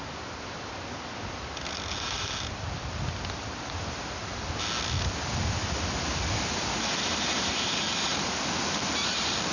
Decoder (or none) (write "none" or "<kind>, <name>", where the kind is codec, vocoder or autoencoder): none